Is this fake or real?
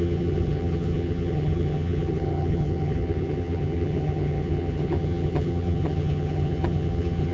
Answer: fake